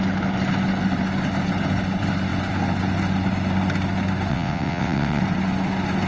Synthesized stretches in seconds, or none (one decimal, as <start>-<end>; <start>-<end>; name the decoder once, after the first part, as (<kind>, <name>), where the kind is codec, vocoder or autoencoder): 4.3-5.2 (vocoder, WaveNeXt)